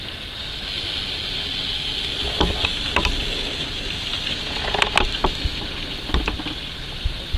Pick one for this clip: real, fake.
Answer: real